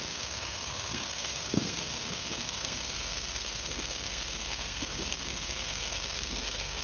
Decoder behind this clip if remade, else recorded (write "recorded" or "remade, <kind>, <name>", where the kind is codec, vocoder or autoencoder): remade, codec, SNAC